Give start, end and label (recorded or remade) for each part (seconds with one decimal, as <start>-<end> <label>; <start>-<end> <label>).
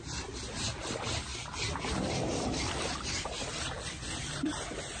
0.0-5.0 recorded